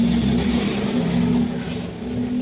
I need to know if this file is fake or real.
real